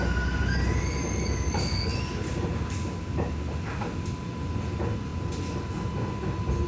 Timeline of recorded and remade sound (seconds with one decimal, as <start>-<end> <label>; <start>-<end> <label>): 0.0-6.7 recorded